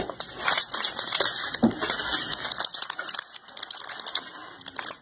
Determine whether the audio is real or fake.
real